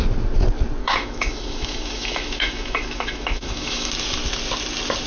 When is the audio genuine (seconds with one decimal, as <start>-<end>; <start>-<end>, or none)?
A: 0.0-0.8; 3.9-5.1